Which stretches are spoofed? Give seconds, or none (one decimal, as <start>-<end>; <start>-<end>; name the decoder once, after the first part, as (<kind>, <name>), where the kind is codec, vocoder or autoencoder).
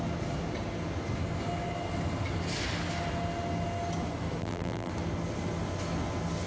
4.4-4.9 (vocoder, BigVGAN v2)